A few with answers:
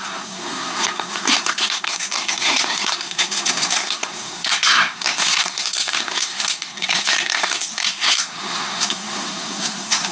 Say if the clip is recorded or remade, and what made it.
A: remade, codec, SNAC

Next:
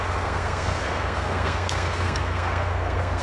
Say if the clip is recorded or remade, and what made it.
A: remade, codec, SNAC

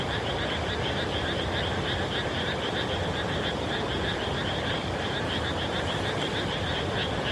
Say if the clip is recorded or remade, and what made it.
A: recorded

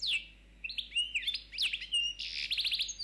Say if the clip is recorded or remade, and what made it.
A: recorded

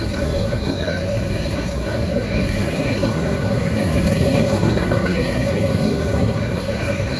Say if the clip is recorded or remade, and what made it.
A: remade, codec, SNAC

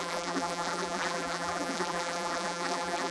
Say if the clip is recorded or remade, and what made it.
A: remade, vocoder, BigVGAN v2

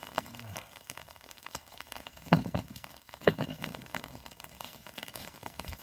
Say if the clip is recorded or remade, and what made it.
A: remade, codec, SNAC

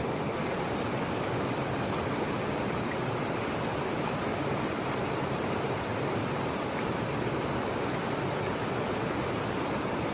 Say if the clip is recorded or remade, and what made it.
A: remade, vocoder, BigVGAN v2